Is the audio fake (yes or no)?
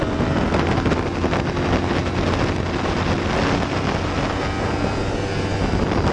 no